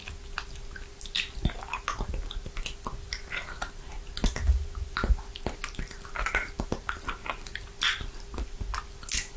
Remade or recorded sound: recorded